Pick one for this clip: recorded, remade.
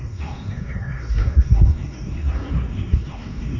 remade